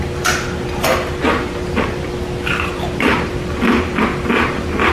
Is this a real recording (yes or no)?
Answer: no